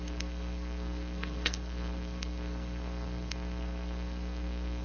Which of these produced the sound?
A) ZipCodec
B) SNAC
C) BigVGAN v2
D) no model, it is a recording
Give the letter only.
B